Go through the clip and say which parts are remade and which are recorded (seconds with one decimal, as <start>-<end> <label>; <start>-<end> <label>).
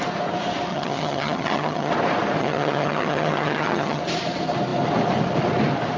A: 0.0-0.7 recorded; 0.7-1.9 remade; 1.9-2.4 recorded; 2.4-4.0 remade; 4.0-6.0 recorded